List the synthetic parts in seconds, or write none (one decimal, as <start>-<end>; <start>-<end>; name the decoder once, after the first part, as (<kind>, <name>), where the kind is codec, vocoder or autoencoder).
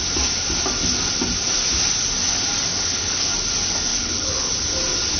2.7-3.3 (codec, HILCodec); 3.9-4.5